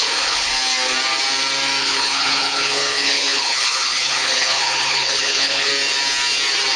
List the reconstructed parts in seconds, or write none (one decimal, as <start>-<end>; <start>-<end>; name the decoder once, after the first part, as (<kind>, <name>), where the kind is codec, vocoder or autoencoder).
0.0-0.5 (codec, HILCodec); 1.8-5.7